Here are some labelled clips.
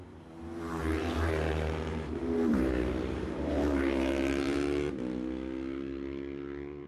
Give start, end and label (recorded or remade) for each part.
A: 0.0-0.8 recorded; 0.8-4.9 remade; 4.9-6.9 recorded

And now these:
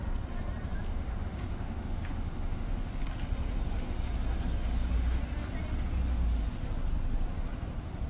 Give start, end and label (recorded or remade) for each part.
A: 0.0-0.9 recorded; 0.9-3.0 remade; 3.0-8.1 recorded